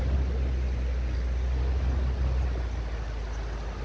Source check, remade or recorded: recorded